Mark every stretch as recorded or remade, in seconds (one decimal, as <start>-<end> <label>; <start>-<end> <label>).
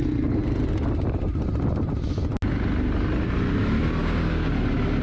0.0-4.0 recorded; 4.0-4.5 remade; 4.5-5.0 recorded